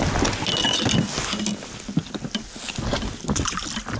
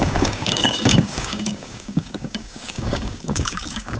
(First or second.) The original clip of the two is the first